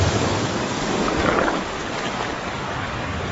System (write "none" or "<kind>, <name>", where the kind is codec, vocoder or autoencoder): codec, DAC